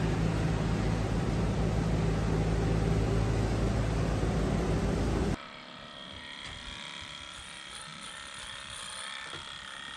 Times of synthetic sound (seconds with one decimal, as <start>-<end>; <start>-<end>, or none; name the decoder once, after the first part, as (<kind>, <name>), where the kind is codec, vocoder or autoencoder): none